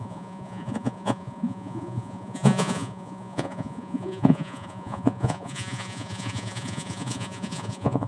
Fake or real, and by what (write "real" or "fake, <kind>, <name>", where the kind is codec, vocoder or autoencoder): fake, vocoder, Vocos